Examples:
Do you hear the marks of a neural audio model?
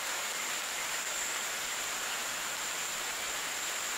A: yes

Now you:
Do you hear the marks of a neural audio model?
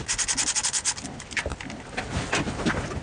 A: no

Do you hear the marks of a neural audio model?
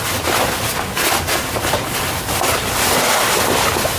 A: no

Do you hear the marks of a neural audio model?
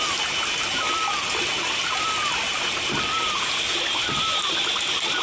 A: no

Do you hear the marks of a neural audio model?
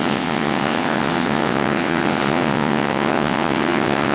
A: yes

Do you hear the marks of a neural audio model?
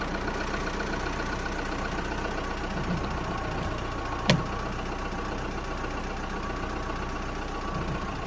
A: no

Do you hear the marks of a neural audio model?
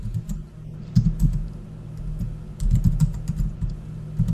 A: no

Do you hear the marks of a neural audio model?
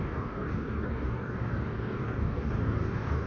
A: yes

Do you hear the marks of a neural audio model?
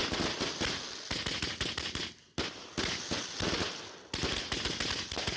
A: no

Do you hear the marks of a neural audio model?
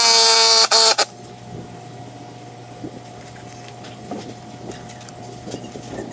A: no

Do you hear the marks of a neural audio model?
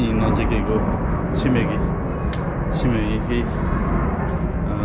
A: no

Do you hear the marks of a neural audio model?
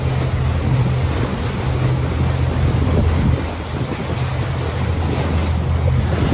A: no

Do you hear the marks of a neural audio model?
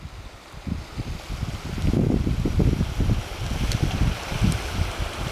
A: no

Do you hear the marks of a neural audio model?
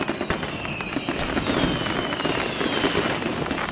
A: no